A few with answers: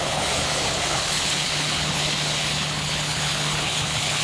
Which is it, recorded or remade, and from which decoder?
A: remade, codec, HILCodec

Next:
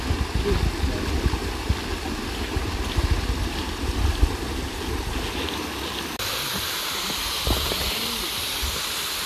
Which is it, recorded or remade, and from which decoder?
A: recorded